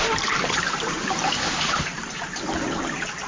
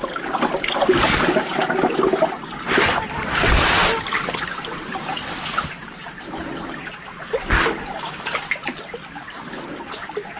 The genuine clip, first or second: second